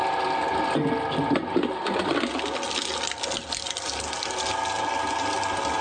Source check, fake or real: real